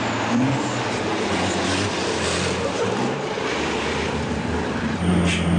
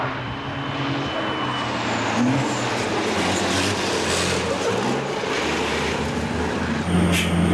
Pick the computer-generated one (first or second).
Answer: first